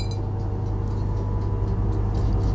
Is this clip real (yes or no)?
yes